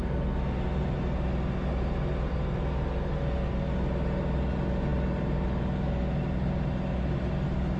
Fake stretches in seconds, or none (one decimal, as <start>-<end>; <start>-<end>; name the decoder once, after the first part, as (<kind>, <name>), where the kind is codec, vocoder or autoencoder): none